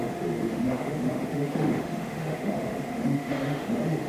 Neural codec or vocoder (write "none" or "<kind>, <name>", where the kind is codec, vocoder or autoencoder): autoencoder, DAC-VAE